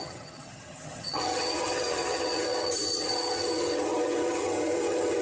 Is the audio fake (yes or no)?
yes